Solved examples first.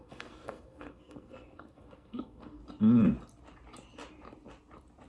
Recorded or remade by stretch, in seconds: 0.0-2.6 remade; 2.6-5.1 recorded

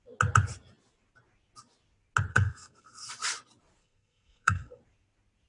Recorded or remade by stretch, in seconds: 0.0-2.3 recorded; 2.3-3.1 remade; 3.1-3.8 recorded; 3.8-4.8 remade; 4.8-5.5 recorded